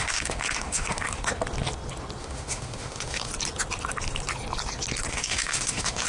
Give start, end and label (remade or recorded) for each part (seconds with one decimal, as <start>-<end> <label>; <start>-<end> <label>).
0.0-1.3 remade; 1.3-2.2 recorded; 2.2-3.3 remade; 3.3-5.1 recorded; 5.1-6.1 remade